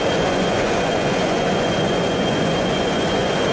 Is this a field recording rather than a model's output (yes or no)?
no